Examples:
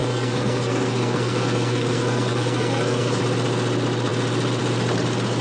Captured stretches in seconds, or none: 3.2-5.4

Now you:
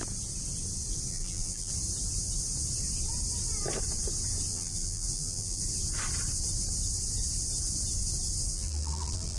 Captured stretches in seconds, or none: 0.0-1.1; 1.7-4.5; 5.6-8.5